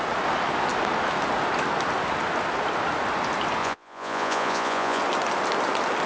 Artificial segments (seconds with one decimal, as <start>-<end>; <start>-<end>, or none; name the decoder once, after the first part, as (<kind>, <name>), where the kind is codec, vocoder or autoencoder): 3.6-5.0 (vocoder, Vocos)